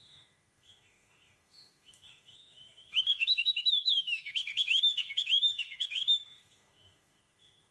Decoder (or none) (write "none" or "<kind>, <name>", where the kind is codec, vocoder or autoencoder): autoencoder, DAC-VAE